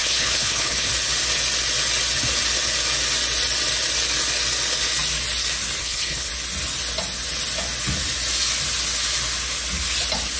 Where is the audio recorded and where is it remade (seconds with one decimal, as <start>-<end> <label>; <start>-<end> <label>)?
0.0-0.9 remade; 0.9-5.8 recorded; 5.8-6.3 remade; 6.3-10.4 recorded